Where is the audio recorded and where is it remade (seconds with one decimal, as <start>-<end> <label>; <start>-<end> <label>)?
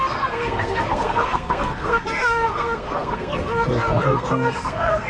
0.0-5.1 remade